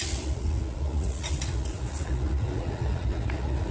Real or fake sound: fake